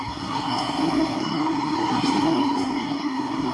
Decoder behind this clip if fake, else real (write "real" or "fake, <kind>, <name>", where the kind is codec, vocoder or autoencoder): fake, codec, SNAC